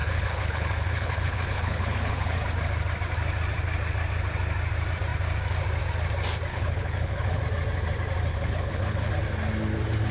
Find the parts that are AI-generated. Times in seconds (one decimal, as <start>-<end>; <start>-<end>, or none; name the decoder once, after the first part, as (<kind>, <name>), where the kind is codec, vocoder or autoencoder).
0.0-2.4 (codec, HILCodec); 6.5-7.4; 8.3-9.1